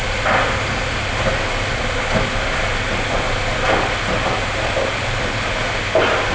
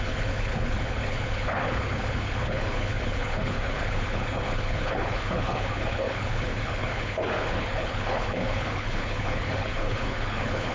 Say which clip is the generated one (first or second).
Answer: second